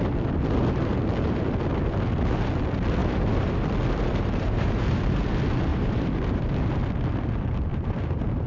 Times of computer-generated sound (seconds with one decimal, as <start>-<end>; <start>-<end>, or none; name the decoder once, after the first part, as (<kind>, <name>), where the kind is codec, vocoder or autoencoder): 3.0-3.5 (vocoder, BigVGAN v2); 4.1-5.2; 5.7-6.4; 7.7-8.5